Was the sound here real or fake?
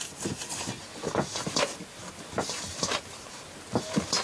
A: real